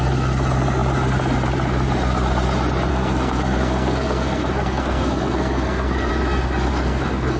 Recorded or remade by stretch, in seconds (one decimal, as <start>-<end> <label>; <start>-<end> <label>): 0.0-2.9 recorded; 2.9-6.1 remade; 6.1-6.7 recorded; 6.7-7.4 remade